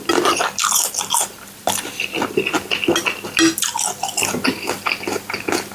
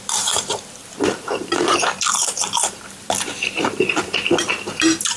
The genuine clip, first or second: first